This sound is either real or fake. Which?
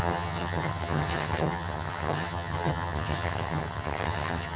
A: fake